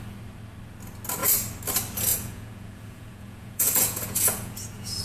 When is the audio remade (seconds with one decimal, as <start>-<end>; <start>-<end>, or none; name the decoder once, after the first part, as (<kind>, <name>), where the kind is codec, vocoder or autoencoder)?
2.1-5.0 (vocoder, Vocos)